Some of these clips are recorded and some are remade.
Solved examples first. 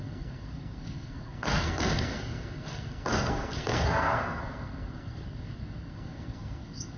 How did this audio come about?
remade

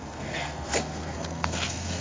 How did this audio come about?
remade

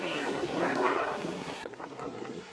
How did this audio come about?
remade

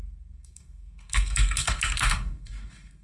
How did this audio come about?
remade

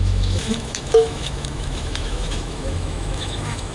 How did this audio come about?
remade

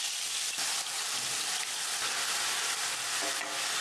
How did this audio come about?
recorded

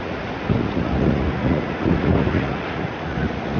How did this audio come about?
remade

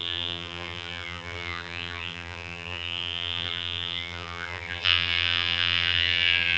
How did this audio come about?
remade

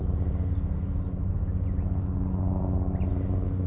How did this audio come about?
recorded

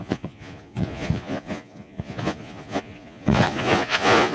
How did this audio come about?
remade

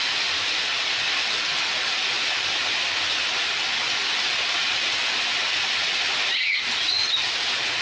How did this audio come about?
recorded